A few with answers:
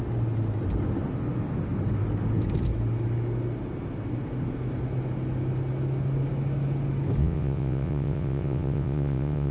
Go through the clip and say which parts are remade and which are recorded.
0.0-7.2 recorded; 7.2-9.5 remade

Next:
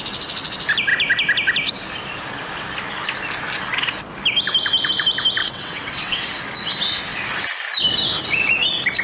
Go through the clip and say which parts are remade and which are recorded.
0.0-5.4 recorded; 5.4-6.4 remade; 6.4-9.0 recorded

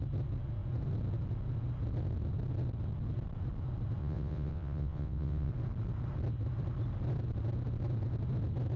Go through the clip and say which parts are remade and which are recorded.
0.0-4.0 recorded; 4.0-5.5 remade; 5.5-8.8 recorded

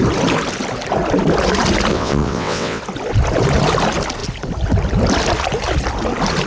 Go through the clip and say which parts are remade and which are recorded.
0.0-1.9 recorded; 1.9-2.8 remade; 2.8-6.5 recorded

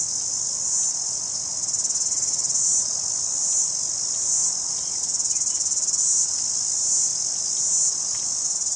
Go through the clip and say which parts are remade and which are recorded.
0.0-8.8 recorded

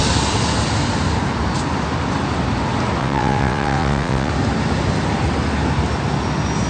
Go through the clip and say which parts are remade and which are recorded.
0.0-3.0 recorded; 3.0-4.3 remade; 4.3-6.7 recorded

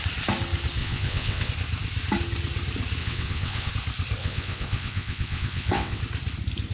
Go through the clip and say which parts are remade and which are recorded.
0.0-0.8 recorded; 0.8-1.5 remade; 1.5-3.0 recorded; 3.0-3.7 remade; 3.7-4.2 recorded; 4.2-6.0 remade; 6.0-6.7 recorded